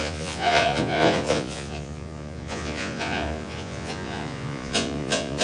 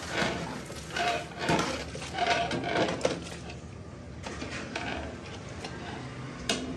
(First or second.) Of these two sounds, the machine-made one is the first